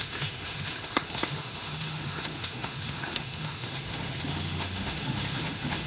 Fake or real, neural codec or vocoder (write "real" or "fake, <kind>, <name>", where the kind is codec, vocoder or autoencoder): fake, autoencoder, DAC-VAE